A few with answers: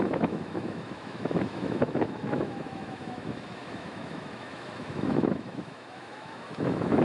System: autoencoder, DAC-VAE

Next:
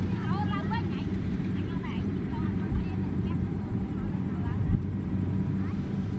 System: vocoder, BigVGAN v2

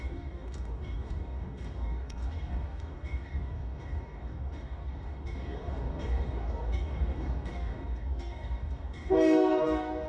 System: codec, DAC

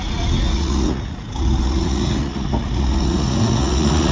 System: vocoder, Vocos